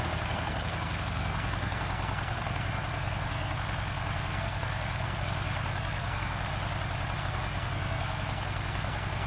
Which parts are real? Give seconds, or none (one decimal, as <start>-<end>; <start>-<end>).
6.5-7.2